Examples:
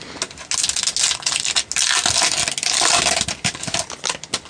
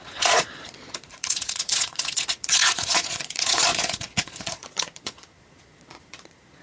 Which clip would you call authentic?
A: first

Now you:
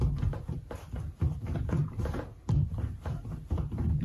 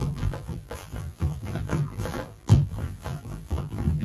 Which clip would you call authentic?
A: first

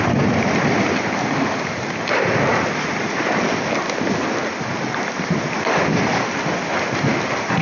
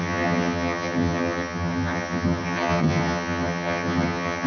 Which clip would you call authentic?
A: first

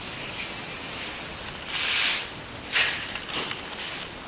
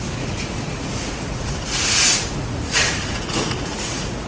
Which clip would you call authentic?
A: first